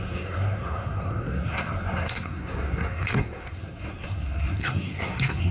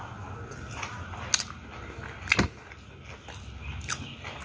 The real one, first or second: second